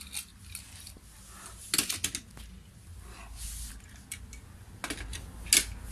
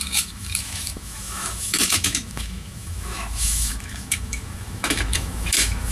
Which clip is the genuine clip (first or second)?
first